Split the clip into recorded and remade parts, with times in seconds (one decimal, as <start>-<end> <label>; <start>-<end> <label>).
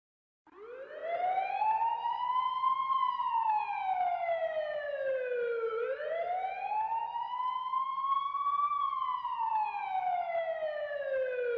0.0-11.6 recorded